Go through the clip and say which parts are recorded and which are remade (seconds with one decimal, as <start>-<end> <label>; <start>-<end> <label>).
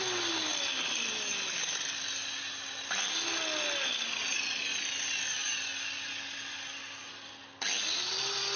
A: 0.0-8.6 recorded